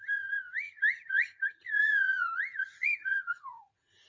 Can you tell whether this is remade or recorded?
remade